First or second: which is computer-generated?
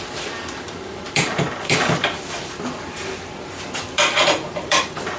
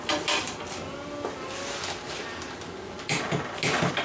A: first